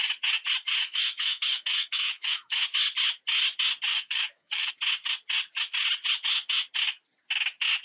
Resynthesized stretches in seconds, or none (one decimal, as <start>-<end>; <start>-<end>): 0.7-2.6; 3.9-4.7

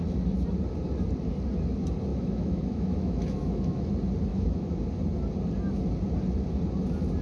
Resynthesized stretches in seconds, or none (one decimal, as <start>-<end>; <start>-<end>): 2.1-3.9; 4.3-4.8

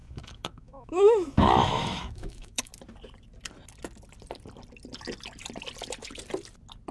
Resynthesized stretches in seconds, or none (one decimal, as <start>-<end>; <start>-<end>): 0.0-2.7

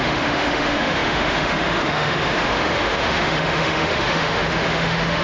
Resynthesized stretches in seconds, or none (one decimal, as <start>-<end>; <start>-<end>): 0.0-5.2